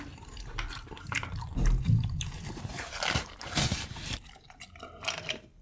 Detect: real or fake fake